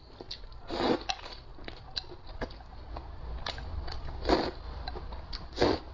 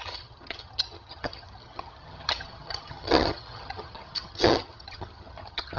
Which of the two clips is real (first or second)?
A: first